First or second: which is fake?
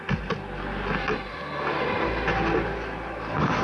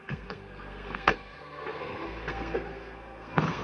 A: second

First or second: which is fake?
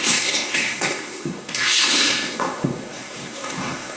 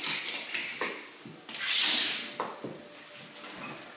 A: first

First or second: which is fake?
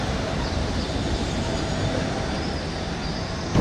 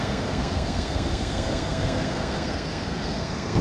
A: second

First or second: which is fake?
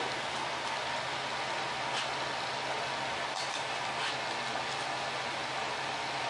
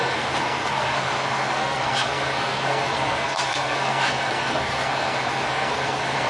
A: second